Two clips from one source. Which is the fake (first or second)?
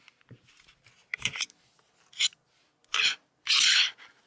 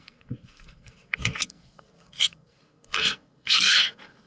second